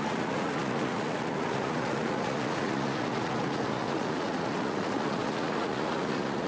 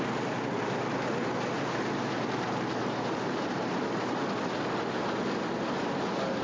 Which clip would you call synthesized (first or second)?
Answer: first